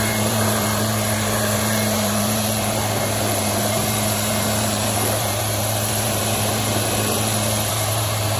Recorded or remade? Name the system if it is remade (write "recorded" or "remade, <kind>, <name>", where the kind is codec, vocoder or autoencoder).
remade, vocoder, BigVGAN v2